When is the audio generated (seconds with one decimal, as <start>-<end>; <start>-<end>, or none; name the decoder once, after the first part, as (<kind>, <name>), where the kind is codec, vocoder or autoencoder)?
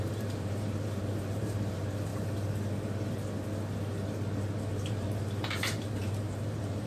0.0-2.1 (vocoder, BigVGAN v2); 4.9-6.9